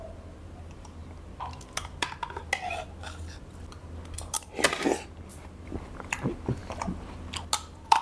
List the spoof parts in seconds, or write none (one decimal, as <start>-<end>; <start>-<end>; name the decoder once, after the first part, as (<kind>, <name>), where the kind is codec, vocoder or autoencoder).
none